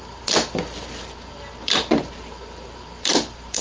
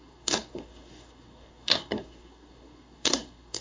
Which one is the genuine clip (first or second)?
first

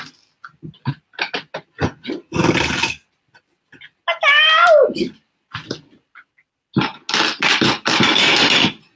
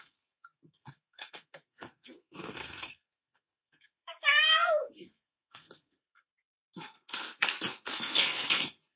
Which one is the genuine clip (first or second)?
first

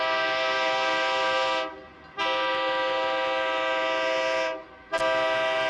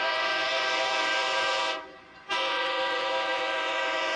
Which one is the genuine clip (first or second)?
first